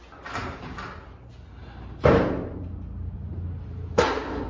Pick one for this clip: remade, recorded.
recorded